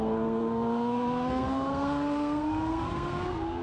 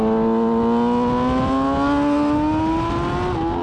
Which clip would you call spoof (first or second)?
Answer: first